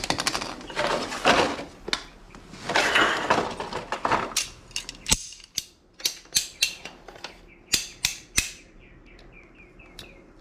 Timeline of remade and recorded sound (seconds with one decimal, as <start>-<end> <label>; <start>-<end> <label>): 0.0-7.9 recorded; 7.9-9.8 remade; 9.8-10.4 recorded